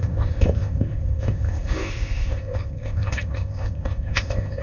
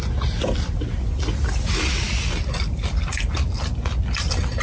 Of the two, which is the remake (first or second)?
first